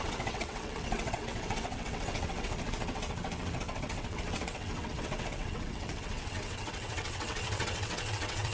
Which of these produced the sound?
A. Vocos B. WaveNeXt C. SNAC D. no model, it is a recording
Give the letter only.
B